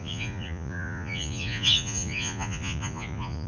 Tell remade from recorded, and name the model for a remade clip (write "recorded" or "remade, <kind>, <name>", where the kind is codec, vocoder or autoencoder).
remade, vocoder, Vocos